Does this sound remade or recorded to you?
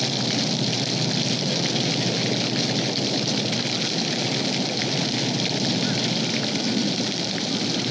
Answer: recorded